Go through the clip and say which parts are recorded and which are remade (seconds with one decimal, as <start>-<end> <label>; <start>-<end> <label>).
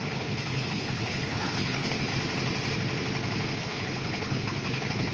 0.0-2.1 remade; 2.1-3.6 recorded; 3.6-5.1 remade